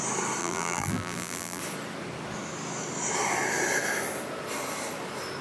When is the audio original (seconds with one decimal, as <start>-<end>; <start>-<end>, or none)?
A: 0.0-0.4; 1.6-5.4